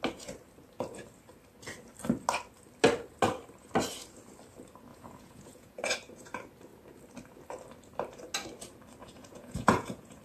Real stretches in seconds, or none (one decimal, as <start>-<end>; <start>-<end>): 0.0-4.9; 5.8-9.0